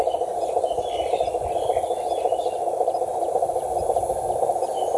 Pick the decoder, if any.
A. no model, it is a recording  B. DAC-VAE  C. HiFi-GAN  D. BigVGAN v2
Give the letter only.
D